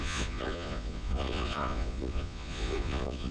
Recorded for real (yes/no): no